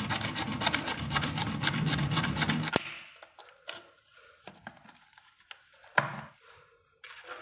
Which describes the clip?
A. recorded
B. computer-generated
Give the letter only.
A